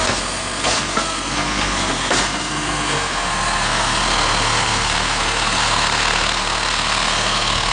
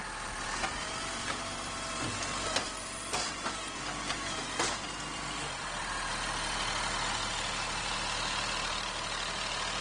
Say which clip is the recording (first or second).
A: second